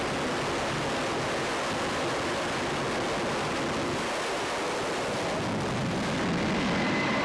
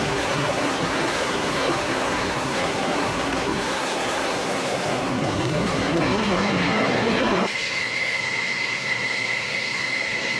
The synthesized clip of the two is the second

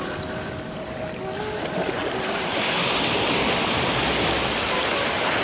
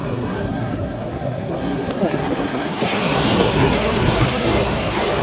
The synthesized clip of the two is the second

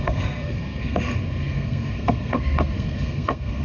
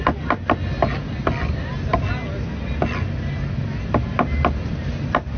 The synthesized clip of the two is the first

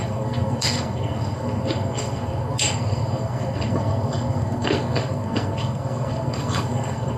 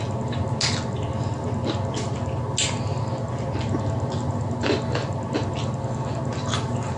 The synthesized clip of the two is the first